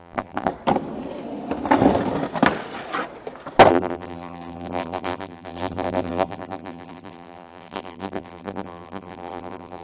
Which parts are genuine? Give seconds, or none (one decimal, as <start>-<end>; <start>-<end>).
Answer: 0.5-3.7